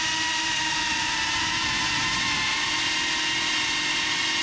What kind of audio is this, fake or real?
fake